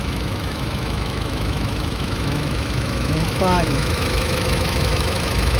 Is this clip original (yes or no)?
no